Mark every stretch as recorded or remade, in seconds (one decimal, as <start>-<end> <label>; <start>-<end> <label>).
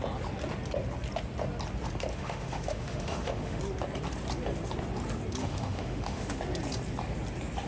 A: 0.0-2.1 recorded; 2.1-3.6 remade; 3.6-5.4 recorded; 5.4-6.4 remade; 6.4-7.7 recorded